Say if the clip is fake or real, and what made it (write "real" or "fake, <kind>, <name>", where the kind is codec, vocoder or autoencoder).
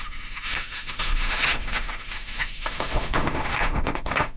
fake, autoencoder, DAC-VAE